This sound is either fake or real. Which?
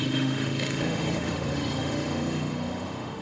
fake